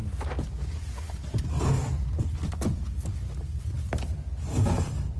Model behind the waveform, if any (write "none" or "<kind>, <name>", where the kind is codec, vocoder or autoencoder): none